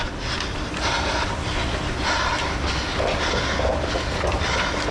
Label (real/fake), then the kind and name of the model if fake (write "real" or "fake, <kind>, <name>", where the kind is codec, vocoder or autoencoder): real